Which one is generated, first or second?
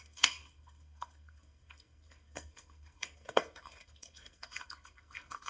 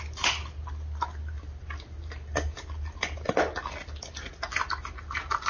first